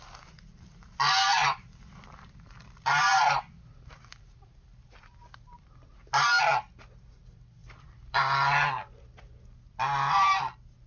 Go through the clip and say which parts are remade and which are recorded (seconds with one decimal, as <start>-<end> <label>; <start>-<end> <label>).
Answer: 0.0-1.3 recorded; 1.3-5.7 remade; 5.7-7.6 recorded; 7.6-8.2 remade; 8.2-10.9 recorded